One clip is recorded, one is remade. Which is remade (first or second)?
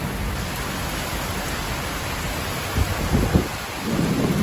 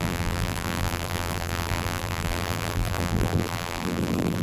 second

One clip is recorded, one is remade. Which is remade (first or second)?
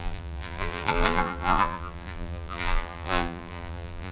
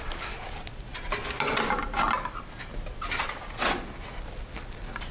first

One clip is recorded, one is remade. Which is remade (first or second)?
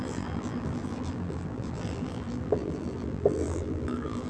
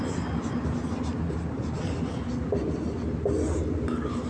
first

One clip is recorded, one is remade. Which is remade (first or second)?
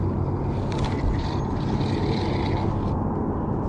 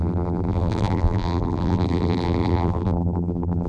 second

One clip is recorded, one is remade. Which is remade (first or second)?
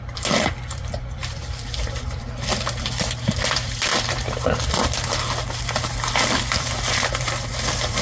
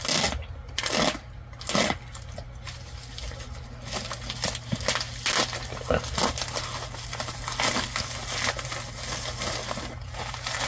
first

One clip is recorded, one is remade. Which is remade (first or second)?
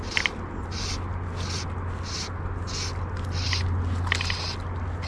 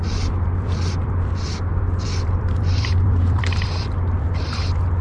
second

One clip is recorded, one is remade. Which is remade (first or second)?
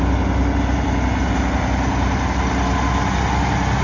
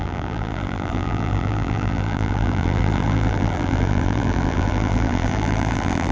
second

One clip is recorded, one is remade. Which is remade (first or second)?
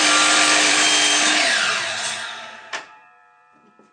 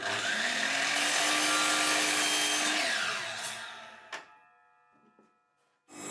first